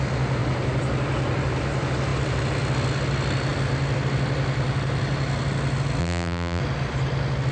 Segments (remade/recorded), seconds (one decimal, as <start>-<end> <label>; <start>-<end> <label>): 0.0-6.0 recorded; 6.0-6.6 remade; 6.6-7.5 recorded